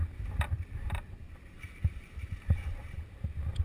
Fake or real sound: fake